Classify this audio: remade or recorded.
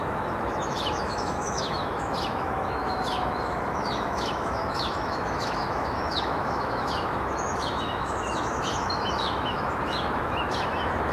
remade